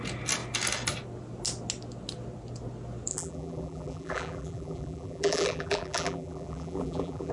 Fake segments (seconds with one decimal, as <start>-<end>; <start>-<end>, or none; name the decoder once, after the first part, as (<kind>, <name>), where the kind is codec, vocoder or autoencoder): 3.1-7.3 (vocoder, BigVGAN v2)